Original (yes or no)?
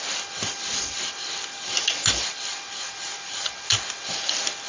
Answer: yes